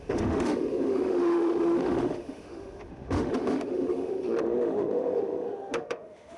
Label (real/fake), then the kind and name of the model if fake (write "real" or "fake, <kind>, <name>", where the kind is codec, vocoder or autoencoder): fake, autoencoder, DAC-VAE